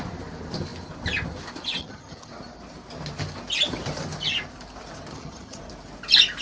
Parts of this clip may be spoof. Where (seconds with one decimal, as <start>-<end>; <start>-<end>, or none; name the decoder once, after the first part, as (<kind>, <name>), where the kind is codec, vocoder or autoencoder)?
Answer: 1.8-2.3 (vocoder, HiFi-GAN); 5.1-5.6